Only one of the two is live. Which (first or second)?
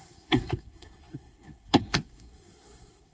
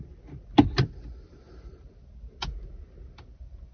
second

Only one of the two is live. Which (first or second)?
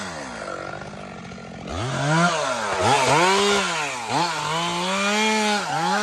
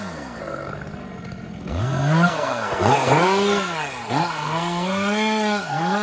first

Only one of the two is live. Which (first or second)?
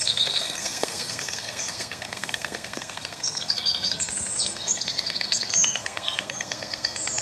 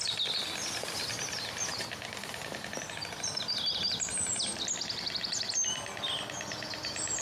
second